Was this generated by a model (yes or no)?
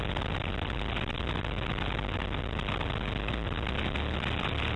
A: no